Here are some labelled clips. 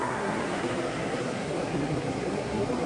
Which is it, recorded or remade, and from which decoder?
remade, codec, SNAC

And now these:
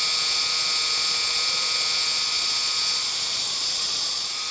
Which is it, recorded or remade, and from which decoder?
recorded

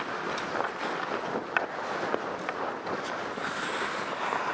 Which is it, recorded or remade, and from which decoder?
recorded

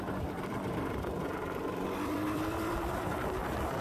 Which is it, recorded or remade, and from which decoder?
remade, vocoder, BigVGAN v2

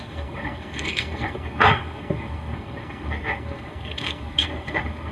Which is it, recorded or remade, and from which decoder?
remade, codec, SNAC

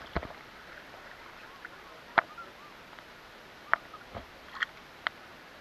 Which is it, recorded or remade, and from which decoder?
recorded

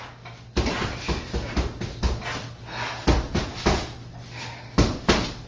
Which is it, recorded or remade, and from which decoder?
recorded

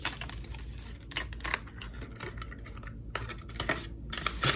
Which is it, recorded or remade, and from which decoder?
recorded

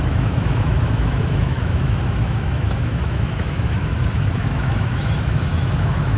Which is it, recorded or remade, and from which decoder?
remade, autoencoder, DAC-VAE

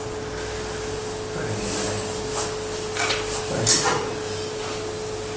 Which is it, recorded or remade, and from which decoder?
recorded